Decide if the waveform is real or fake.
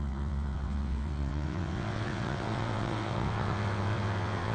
fake